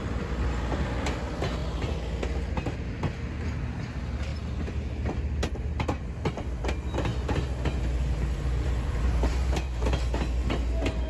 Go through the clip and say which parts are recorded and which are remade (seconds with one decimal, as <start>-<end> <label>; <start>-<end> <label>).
0.0-7.1 recorded; 7.1-10.0 remade; 10.0-11.1 recorded